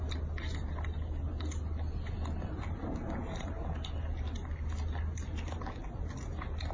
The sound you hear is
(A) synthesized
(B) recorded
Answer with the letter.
B